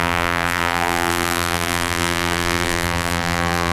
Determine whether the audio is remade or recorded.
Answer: remade